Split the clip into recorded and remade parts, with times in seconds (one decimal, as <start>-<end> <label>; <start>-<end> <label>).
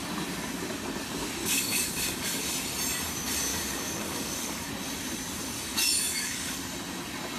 0.0-1.4 recorded; 1.4-2.5 remade; 2.5-3.5 recorded; 3.5-4.7 remade; 4.7-5.7 recorded; 5.7-6.6 remade; 6.6-7.4 recorded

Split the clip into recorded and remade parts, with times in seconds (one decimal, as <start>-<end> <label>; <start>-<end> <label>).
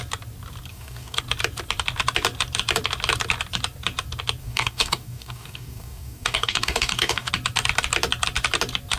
0.0-0.7 recorded; 0.7-1.2 remade; 1.2-4.4 recorded; 4.4-7.3 remade; 7.3-9.0 recorded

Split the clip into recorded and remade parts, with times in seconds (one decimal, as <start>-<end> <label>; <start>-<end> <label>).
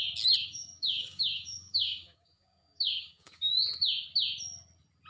0.0-0.4 recorded; 0.4-3.5 remade; 3.5-5.1 recorded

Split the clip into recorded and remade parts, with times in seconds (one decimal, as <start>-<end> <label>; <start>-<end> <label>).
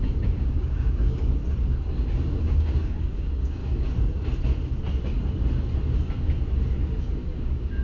0.0-1.4 remade; 1.4-2.4 recorded; 2.4-3.6 remade; 3.6-7.0 recorded; 7.0-7.8 remade